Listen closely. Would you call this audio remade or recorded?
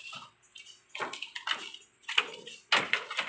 recorded